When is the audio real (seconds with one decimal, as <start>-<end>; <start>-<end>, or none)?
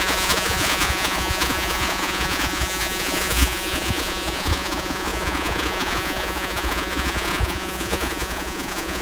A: none